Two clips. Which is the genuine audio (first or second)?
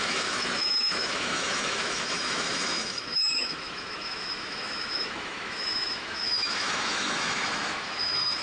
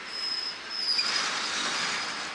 second